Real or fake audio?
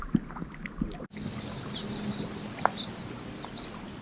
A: real